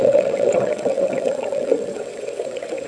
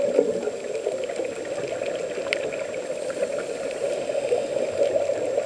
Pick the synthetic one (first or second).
first